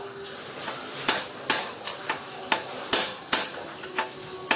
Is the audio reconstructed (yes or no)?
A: no